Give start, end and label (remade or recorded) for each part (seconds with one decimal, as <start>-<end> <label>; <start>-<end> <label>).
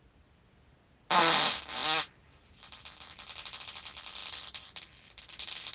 0.0-5.7 recorded